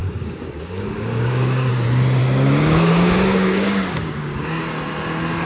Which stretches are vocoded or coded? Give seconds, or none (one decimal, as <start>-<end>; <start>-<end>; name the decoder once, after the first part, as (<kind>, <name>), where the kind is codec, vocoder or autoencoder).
0.0-1.7 (codec, DAC); 2.2-4.6